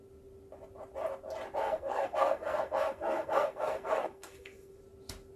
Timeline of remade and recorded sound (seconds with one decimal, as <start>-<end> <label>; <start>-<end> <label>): 0.0-1.6 recorded; 1.6-4.8 remade; 4.8-5.4 recorded